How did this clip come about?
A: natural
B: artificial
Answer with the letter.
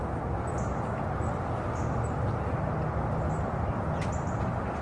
A